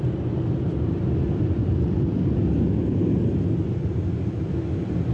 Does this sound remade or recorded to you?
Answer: recorded